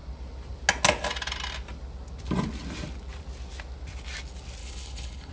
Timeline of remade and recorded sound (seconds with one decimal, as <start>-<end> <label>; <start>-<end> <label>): 0.0-4.6 recorded; 4.6-5.3 remade